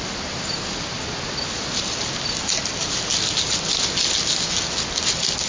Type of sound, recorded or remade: recorded